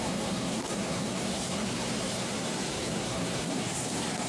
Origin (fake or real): fake